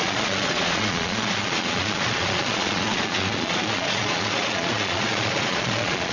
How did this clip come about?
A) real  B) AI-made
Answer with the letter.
B